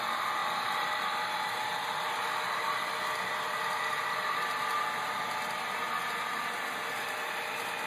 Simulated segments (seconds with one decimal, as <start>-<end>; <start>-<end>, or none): 0.4-2.9